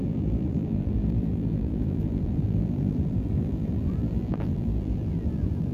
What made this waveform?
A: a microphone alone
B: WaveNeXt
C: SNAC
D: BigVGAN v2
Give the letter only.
D